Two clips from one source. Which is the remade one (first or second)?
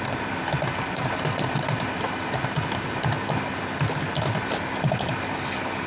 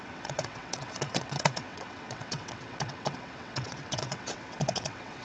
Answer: second